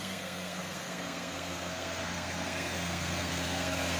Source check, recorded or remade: remade